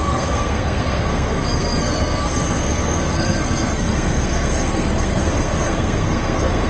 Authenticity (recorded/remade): remade